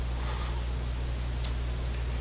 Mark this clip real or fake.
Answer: real